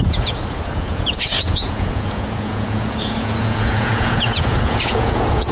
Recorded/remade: remade